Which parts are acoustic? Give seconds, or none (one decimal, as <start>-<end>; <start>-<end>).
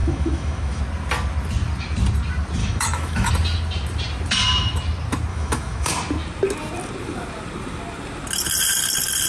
0.8-2.6; 3.3-5.3; 5.9-9.3